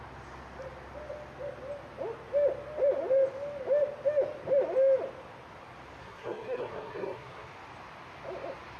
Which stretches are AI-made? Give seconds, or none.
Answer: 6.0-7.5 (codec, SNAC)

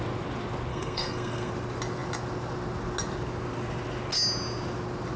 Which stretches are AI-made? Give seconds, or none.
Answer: 0.7-1.5 (codec, SNAC)